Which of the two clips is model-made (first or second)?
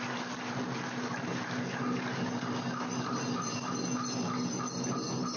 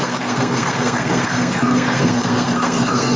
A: second